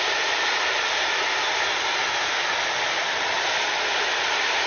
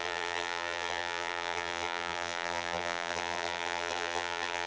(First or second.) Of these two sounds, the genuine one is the first